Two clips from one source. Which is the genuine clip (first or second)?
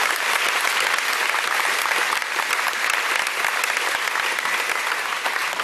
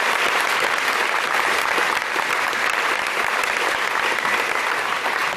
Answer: first